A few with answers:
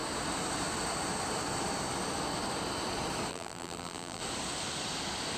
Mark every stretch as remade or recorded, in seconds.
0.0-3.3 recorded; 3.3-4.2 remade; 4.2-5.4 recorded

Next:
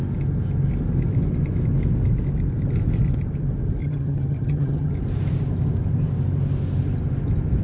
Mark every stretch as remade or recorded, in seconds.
0.0-3.8 recorded; 3.8-4.9 remade; 4.9-7.6 recorded

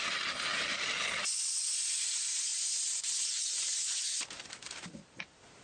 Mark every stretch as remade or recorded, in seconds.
0.0-5.6 recorded

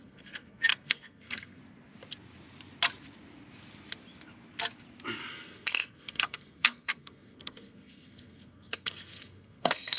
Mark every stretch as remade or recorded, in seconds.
0.0-1.6 remade; 1.6-5.3 recorded; 5.3-10.0 remade